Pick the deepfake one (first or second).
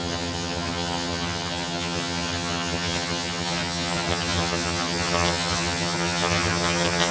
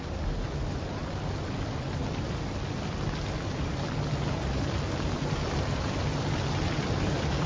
first